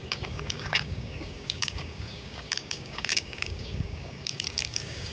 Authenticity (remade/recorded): remade